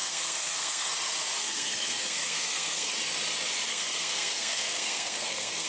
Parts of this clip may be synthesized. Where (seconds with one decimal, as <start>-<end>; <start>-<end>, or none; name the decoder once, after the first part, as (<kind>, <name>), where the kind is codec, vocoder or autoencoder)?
0.0-0.9 (codec, SNAC); 1.4-2.9; 3.7-5.7